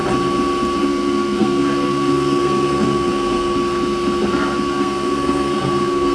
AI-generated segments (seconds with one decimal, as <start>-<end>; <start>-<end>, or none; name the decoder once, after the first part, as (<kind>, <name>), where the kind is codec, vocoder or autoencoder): 0.8-3.6 (codec, SNAC); 4.7-6.1